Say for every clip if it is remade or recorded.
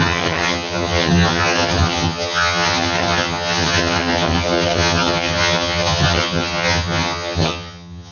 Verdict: remade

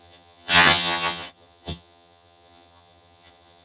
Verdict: remade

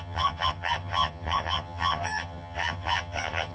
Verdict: remade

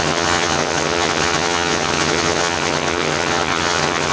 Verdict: remade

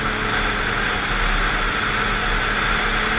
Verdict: recorded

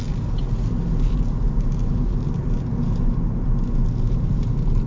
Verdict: recorded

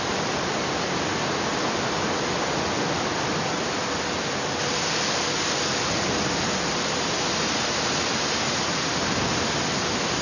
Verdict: recorded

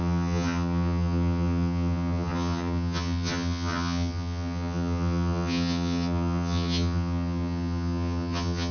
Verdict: remade